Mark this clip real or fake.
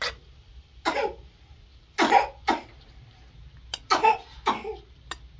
real